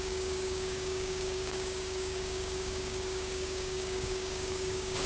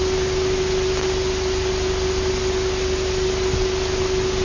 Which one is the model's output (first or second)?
first